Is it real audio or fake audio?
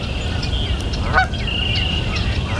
real